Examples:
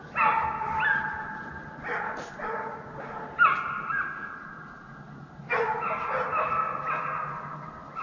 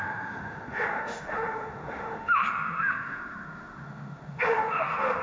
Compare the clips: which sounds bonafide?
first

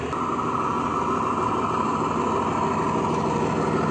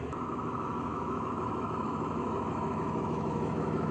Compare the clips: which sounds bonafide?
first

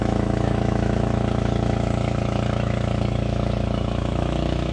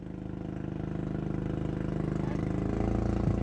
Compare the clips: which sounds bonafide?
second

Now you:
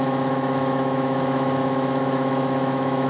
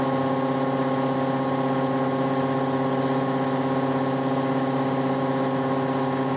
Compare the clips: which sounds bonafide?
second